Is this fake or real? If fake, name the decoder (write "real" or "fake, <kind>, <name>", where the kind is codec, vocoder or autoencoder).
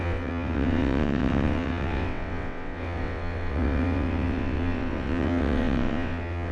fake, vocoder, WaveNeXt